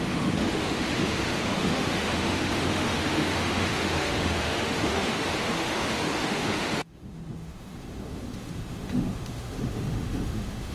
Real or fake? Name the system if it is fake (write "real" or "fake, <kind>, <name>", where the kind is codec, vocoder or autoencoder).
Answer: fake, autoencoder, DAC-VAE